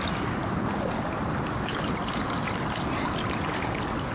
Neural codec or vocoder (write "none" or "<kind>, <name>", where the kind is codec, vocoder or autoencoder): none